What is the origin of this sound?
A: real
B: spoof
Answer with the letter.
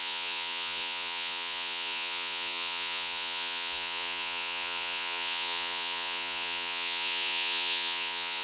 B